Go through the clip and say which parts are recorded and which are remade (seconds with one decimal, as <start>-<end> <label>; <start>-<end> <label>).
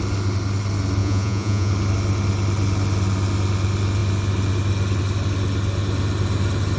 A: 0.0-1.0 recorded; 1.0-1.7 remade; 1.7-6.8 recorded